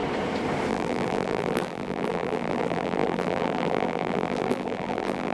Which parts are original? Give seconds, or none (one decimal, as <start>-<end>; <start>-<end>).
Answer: 0.0-0.7

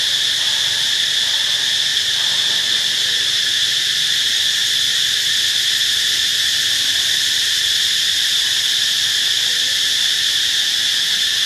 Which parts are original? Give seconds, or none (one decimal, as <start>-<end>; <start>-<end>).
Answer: 0.0-1.9; 5.4-6.3

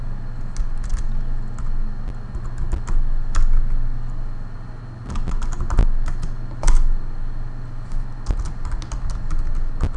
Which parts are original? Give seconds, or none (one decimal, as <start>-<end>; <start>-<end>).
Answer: 0.0-10.0